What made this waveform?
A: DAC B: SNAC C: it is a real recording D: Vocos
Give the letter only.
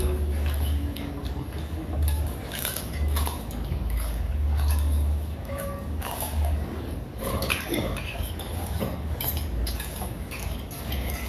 A